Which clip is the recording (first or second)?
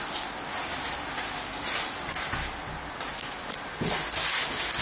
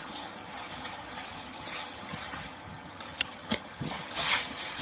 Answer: first